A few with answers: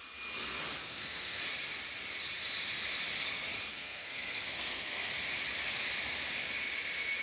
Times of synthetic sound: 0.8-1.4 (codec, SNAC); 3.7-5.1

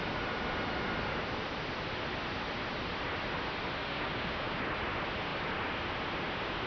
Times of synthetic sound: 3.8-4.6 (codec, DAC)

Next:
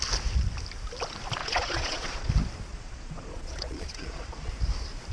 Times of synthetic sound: 1.4-2.3 (vocoder, Vocos); 2.7-4.5

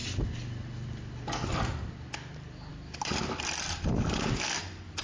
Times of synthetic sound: none

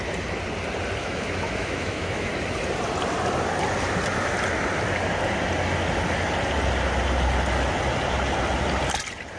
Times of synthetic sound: 1.0-2.3 (autoencoder, DAC-VAE)

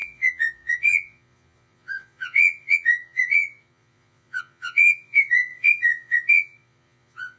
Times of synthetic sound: 0.0-7.4 (vocoder, Vocos)

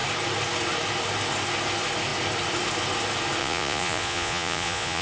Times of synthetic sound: 3.4-5.0 (vocoder, Vocos)

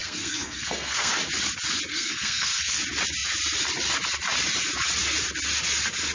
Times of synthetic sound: 0.0-1.1 (codec, SNAC); 1.9-2.8